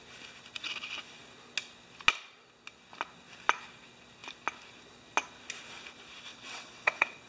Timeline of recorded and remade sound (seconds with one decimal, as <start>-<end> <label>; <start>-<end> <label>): 0.0-6.3 recorded; 6.3-7.3 remade